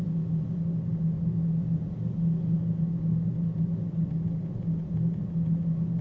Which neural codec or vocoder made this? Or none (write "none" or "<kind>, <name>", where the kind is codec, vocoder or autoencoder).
none